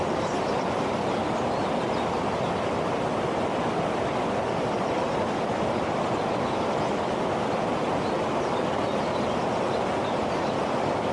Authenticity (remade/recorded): recorded